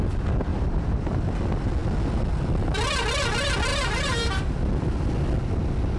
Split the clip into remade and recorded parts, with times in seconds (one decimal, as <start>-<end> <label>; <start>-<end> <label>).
0.0-0.5 recorded; 0.5-1.3 remade; 1.3-3.7 recorded; 3.7-4.6 remade; 4.6-6.0 recorded